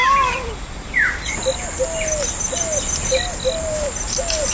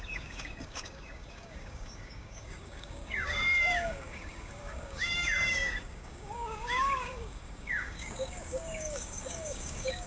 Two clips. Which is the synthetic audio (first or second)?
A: second